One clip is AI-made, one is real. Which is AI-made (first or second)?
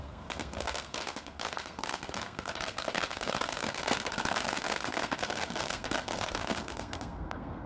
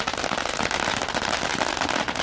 first